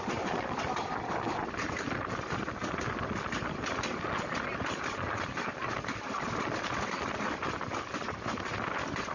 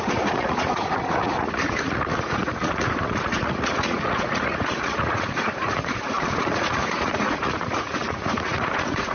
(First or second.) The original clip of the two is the first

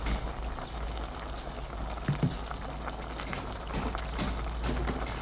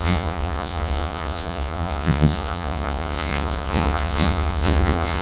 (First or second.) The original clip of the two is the first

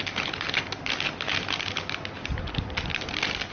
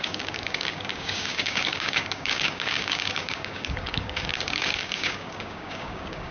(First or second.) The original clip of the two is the first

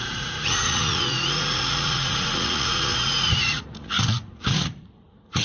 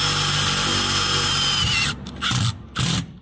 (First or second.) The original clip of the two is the second